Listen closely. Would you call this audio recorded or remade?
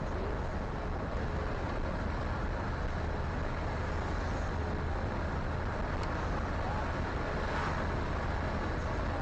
recorded